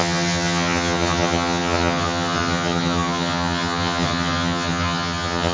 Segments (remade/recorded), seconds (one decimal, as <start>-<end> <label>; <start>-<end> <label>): 0.0-5.5 remade